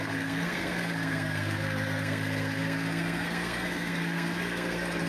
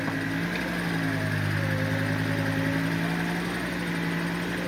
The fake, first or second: first